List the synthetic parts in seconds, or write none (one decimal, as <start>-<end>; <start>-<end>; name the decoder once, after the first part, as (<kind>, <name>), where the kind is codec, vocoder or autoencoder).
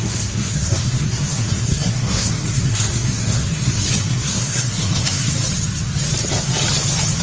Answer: 0.0-5.3 (codec, SNAC)